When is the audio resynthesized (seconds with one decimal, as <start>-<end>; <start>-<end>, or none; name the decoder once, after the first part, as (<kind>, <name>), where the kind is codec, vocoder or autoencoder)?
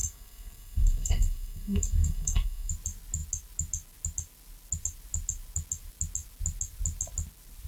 0.0-2.7 (codec, SNAC)